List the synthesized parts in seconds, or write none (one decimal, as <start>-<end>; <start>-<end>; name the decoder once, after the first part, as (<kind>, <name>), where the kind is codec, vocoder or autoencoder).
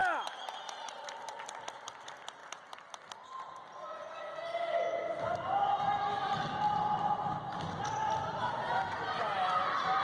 none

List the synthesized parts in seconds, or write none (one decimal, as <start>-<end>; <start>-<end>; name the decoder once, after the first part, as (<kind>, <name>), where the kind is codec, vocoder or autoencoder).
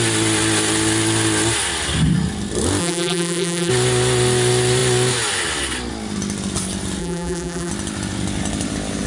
2.8-3.7 (vocoder, BigVGAN v2); 7.0-7.7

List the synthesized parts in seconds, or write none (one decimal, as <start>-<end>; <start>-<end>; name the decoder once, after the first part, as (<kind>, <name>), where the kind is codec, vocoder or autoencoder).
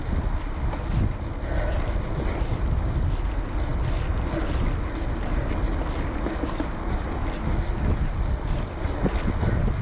none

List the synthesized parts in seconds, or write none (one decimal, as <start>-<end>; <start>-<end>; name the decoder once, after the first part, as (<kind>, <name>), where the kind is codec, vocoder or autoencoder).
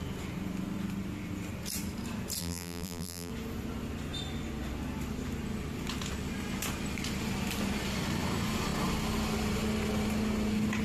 2.4-3.3 (vocoder, BigVGAN v2)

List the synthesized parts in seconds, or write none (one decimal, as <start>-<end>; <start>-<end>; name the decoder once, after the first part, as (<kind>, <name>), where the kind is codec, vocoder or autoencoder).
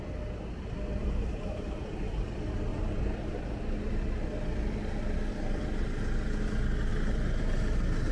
1.0-2.2 (vocoder, BigVGAN v2); 2.7-3.6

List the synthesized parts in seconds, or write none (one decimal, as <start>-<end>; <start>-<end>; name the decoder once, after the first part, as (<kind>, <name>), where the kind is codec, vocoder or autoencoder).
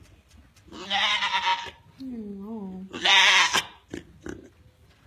none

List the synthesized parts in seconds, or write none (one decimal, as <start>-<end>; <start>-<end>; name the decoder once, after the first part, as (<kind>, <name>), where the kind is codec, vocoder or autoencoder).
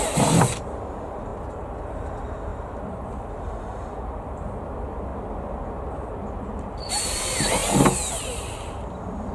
0.0-5.1 (vocoder, BigVGAN v2); 6.9-7.6; 8.1-9.3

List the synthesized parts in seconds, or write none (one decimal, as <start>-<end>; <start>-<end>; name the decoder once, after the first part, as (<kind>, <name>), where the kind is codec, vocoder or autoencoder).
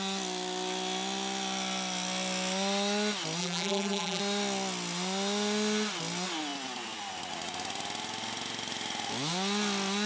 3.4-4.2 (vocoder, BigVGAN v2)